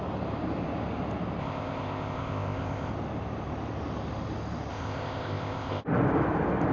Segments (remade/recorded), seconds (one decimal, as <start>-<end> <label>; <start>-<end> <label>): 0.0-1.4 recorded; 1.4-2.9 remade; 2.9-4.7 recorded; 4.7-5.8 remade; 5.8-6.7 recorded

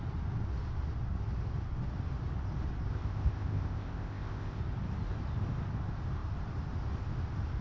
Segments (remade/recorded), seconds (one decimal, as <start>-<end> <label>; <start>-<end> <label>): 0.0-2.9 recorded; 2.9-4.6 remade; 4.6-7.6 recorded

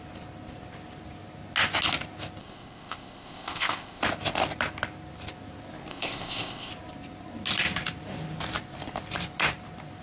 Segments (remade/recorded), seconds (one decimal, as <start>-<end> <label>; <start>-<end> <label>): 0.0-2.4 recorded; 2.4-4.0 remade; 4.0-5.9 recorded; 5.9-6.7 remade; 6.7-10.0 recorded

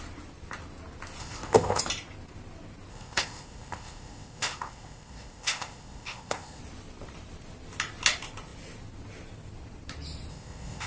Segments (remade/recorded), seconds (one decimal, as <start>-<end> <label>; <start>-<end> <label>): 0.0-1.2 recorded; 1.2-1.8 remade; 1.8-2.9 recorded; 2.9-6.6 remade; 6.6-10.3 recorded; 10.3-10.9 remade

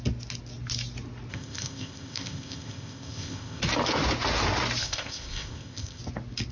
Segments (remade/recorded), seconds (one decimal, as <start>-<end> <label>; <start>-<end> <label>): 0.0-1.3 recorded; 1.3-3.6 remade; 3.6-4.8 recorded; 4.8-6.0 remade; 6.0-6.5 recorded